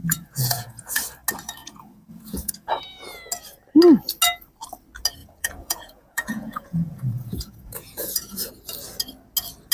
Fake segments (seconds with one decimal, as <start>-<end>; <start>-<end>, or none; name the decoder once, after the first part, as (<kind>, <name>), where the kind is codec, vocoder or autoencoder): 0.0-1.0 (vocoder, Vocos); 1.6-2.8; 5.2-8.5